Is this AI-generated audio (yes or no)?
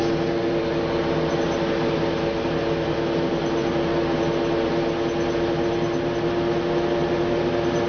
no